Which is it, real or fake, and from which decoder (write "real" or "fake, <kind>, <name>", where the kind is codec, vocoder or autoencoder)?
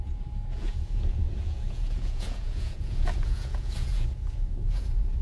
fake, vocoder, Vocos